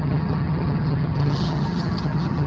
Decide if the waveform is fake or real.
fake